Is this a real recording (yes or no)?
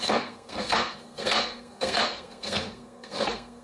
no